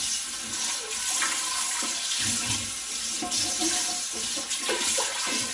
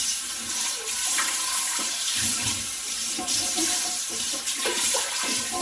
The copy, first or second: second